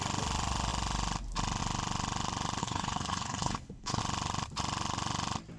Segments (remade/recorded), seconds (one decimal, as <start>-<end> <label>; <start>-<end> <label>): 0.0-2.6 recorded; 2.6-4.0 remade; 4.0-5.6 recorded